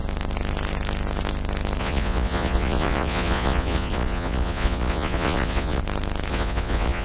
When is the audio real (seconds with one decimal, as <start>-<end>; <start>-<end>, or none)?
0.0-1.8; 5.8-6.3